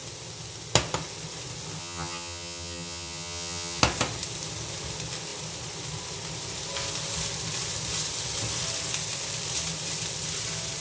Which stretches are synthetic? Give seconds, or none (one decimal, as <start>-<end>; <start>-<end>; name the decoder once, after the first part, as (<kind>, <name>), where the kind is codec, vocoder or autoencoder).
1.8-3.8 (vocoder, HiFi-GAN)